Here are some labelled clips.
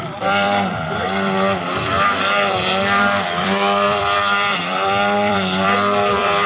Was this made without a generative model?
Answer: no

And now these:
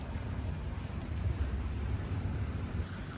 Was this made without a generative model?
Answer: no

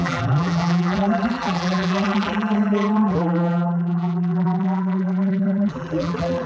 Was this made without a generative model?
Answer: no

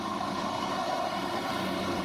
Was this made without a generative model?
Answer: yes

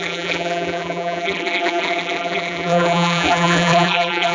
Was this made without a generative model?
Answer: no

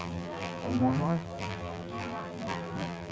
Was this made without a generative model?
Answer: no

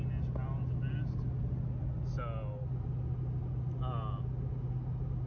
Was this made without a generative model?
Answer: yes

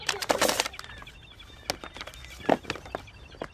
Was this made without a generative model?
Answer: yes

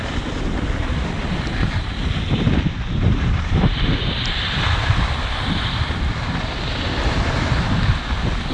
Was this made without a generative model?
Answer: no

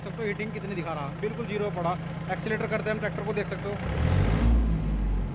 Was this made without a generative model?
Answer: yes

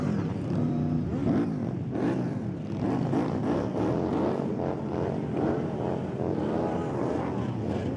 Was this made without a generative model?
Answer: no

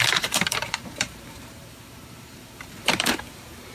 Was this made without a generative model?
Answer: no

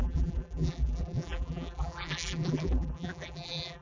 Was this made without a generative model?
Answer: no